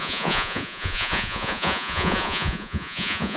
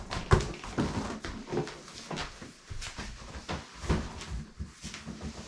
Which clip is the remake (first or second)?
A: first